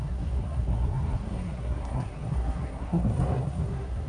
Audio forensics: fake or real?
fake